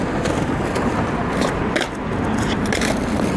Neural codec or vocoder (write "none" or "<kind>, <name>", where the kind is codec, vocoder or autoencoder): none